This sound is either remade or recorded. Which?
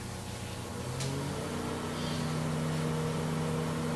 recorded